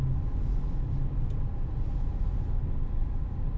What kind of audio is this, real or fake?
real